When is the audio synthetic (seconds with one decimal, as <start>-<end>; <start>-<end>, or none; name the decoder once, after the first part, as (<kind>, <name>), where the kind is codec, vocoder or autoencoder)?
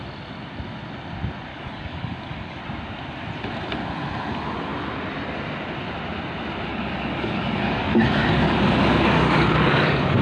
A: 1.5-2.6 (codec, DAC); 6.7-10.2